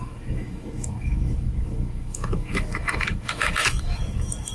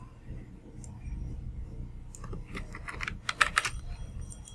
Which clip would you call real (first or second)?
second